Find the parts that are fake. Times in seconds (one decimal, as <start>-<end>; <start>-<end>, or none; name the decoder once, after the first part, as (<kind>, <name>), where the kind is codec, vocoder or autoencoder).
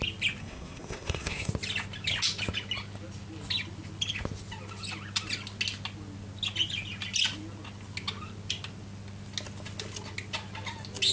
0.4-1.5 (codec, SNAC)